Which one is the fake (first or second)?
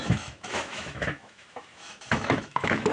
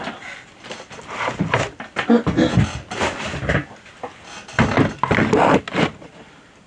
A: first